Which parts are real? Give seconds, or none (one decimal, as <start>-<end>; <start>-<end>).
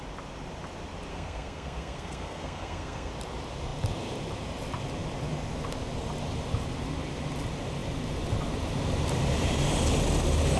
0.0-1.1; 3.1-10.6